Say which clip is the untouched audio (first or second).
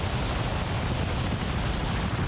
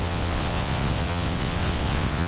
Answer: first